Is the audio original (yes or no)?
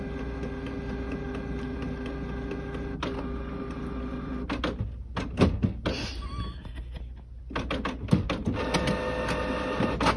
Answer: yes